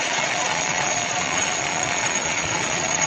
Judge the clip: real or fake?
fake